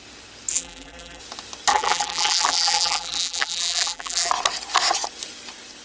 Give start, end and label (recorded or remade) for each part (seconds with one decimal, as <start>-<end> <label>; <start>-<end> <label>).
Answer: 0.0-0.5 recorded; 0.5-1.2 remade; 1.2-1.7 recorded; 1.7-4.3 remade; 4.3-5.8 recorded

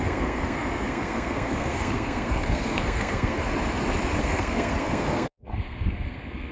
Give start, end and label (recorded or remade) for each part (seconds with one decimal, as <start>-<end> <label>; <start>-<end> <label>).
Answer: 0.0-3.4 remade; 3.4-4.2 recorded; 4.2-6.5 remade

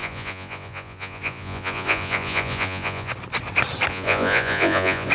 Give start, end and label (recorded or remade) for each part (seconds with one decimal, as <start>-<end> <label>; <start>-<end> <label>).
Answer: 0.0-3.1 remade; 3.1-3.9 recorded; 3.9-5.1 remade

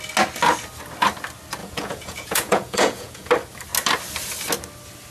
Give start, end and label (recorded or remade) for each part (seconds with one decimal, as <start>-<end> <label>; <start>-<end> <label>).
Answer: 0.0-1.6 recorded; 1.6-3.3 remade; 3.3-5.1 recorded

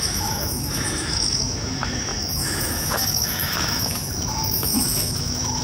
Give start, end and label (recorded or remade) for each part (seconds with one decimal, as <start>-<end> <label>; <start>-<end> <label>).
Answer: 0.0-5.6 remade